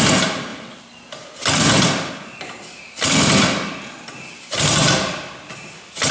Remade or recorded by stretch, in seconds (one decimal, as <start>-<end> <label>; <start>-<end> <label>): 0.0-6.1 recorded